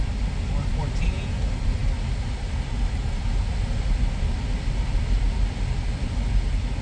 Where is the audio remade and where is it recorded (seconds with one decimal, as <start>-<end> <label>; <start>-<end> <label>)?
0.0-6.8 recorded